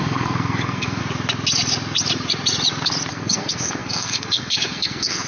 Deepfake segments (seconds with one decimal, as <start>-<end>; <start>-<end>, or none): 0.0-1.0; 3.1-5.3